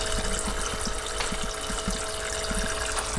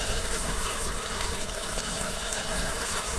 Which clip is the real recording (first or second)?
first